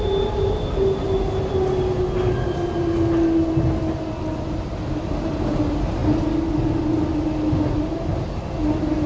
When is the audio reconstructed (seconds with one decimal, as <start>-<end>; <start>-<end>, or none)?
none

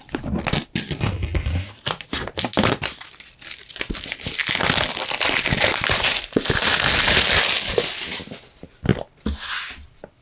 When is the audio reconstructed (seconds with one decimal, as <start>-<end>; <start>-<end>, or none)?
none

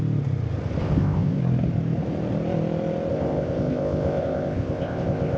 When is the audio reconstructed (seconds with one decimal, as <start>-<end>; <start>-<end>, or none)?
0.8-1.4; 3.1-5.4

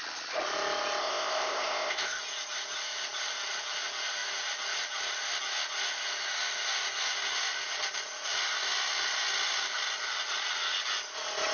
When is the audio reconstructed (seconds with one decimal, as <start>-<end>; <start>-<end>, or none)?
1.0-2.2

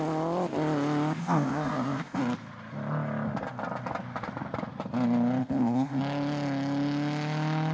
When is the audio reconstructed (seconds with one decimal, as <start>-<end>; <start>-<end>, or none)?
1.2-2.2; 5.4-6.0